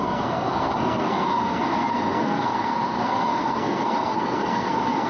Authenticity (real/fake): fake